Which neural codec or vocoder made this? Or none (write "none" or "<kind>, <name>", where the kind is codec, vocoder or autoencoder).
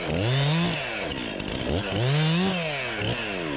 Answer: none